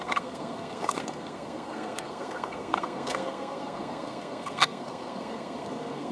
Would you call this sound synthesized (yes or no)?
yes